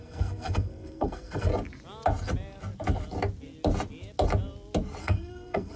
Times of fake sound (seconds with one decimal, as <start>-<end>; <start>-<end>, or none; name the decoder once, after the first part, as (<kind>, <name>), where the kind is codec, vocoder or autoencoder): 0.0-1.5 (codec, SNAC); 5.0-5.8